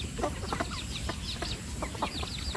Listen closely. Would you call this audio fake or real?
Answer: real